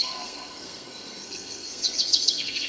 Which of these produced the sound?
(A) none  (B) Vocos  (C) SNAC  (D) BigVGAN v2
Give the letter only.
C